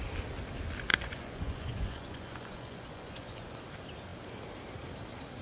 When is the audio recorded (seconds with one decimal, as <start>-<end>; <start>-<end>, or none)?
0.0-0.9; 3.6-5.4